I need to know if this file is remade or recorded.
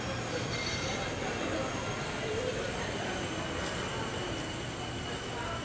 recorded